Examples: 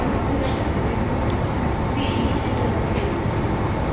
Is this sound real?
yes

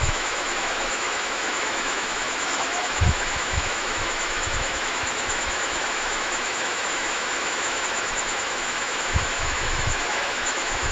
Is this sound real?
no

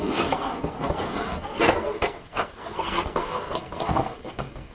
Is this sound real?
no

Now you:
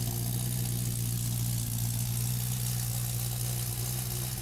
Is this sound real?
yes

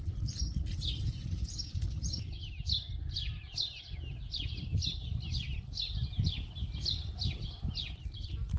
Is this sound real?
yes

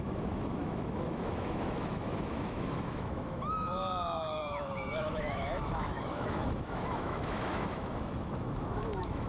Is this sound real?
no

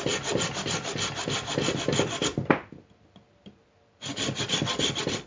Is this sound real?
yes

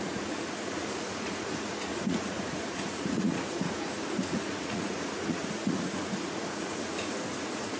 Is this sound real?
no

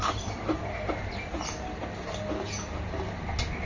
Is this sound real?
yes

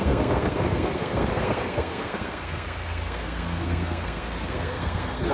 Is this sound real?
no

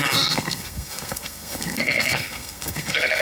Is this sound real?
no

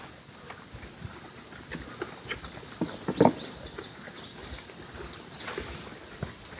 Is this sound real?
yes